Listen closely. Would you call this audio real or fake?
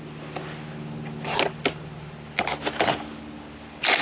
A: real